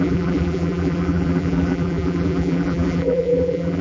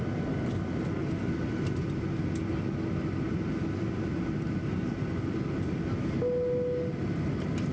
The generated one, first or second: first